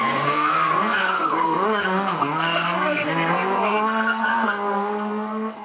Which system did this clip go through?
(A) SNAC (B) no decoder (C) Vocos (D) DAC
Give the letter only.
A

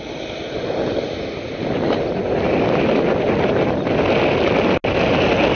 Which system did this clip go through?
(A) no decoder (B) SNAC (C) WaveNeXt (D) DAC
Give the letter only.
A